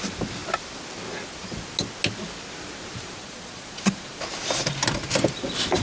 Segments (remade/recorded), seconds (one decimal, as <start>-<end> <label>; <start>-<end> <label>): 0.0-3.2 recorded; 3.2-4.2 remade; 4.2-5.8 recorded